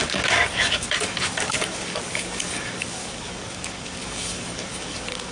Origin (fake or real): fake